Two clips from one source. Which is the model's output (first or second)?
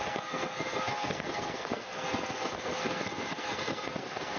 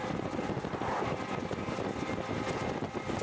first